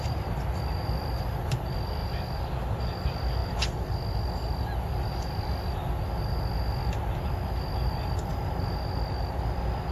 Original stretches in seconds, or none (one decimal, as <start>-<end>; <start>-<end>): 0.0-9.9

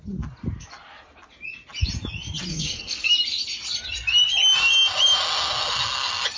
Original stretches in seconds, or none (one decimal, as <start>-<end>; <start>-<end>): 0.0-2.5; 3.1-6.4

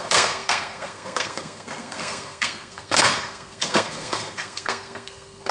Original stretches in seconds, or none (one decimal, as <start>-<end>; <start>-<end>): none

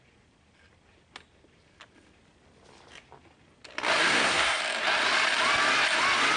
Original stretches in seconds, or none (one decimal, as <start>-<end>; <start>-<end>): 0.0-4.1; 4.6-6.4

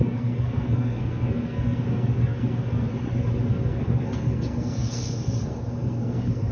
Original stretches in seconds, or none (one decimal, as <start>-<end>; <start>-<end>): 2.9-3.5

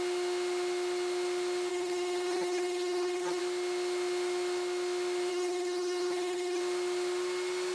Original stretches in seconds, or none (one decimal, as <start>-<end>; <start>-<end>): 0.0-1.7; 3.4-5.3; 6.6-7.7

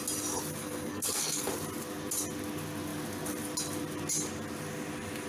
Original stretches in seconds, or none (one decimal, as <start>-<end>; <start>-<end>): 0.0-0.6; 1.5-5.3

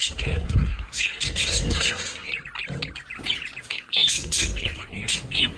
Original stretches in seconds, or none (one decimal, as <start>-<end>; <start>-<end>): 2.3-3.6